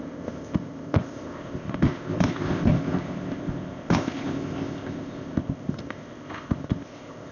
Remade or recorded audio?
remade